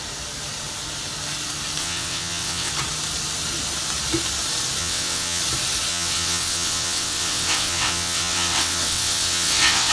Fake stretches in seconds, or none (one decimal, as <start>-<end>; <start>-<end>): 1.8-2.7; 4.8-5.4; 5.9-9.9